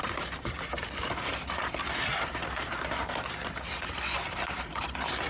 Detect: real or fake real